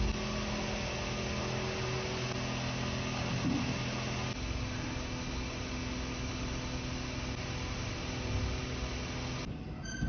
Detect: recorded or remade recorded